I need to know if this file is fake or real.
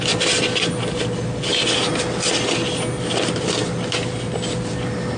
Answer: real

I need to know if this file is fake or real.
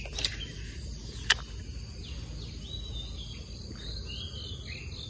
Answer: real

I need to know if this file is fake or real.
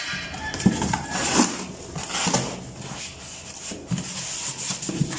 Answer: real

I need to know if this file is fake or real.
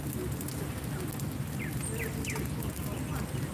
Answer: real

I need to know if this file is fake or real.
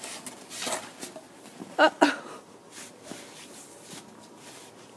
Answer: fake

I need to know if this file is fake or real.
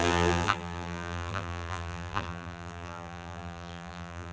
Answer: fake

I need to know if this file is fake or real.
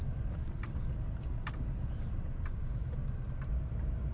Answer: fake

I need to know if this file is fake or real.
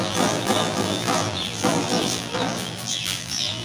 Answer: fake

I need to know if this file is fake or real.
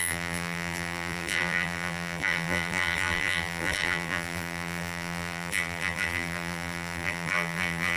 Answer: fake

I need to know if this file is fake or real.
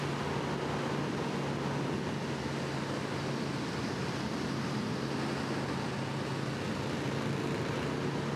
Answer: real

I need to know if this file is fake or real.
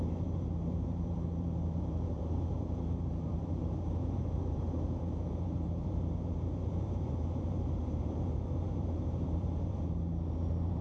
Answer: fake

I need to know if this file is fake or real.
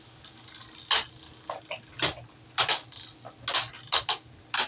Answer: real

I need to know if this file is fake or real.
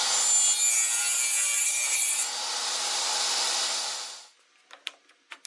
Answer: real